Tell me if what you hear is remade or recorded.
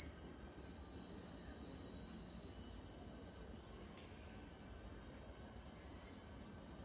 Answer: recorded